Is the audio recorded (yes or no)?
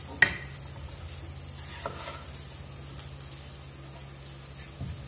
yes